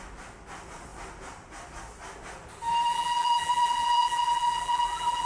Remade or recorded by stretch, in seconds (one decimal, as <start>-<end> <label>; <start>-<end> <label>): 0.0-2.9 recorded; 2.9-5.3 remade

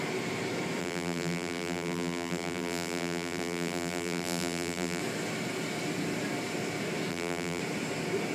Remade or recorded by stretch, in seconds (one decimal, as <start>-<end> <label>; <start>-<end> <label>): 0.0-0.8 recorded; 0.8-5.0 remade; 5.0-7.1 recorded; 7.1-7.6 remade; 7.6-8.3 recorded